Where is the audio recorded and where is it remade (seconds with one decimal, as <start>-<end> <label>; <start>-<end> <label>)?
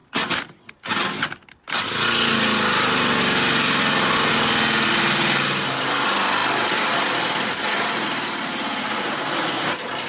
0.0-10.1 recorded